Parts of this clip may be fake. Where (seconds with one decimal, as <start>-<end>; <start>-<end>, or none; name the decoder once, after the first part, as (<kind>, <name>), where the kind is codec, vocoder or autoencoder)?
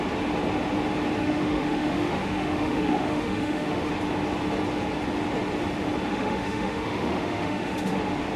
1.2-3.9 (autoencoder, DAC-VAE); 6.1-8.0